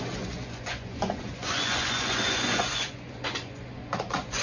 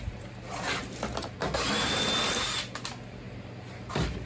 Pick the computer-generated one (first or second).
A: first